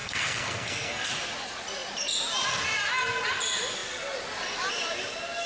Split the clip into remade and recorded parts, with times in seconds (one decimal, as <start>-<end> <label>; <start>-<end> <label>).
0.0-1.1 remade; 1.1-5.5 recorded